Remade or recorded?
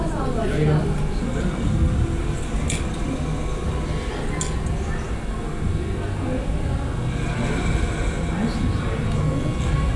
recorded